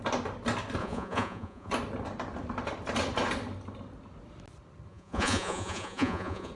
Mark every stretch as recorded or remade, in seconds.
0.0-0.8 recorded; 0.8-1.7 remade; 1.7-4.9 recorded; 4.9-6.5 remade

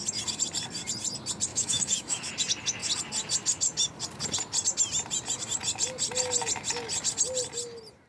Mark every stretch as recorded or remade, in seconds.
0.0-1.5 recorded; 1.5-2.3 remade; 2.3-8.1 recorded